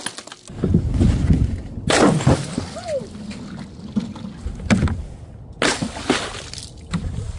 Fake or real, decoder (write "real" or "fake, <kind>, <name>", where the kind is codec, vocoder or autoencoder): real